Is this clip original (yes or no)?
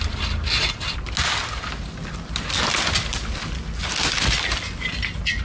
yes